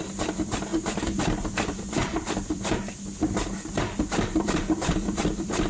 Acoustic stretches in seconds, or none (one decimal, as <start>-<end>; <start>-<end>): none